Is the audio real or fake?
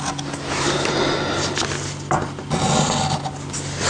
real